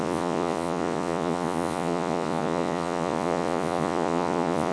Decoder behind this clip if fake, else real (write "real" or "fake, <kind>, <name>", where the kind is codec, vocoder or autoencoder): fake, vocoder, Vocos